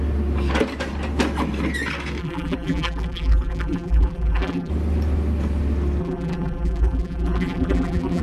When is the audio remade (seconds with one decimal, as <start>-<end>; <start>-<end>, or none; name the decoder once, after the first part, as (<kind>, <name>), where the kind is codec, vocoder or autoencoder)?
2.2-4.7 (vocoder, BigVGAN v2); 6.0-8.2

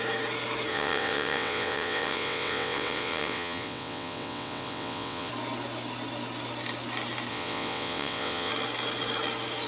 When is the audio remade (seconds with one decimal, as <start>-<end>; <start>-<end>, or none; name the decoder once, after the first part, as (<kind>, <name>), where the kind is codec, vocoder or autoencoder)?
0.7-5.3 (vocoder, WaveNeXt); 7.3-8.5

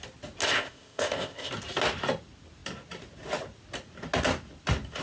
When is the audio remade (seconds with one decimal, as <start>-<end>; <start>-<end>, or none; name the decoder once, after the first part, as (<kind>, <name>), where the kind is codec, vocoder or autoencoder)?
0.4-1.5 (codec, ZipCodec)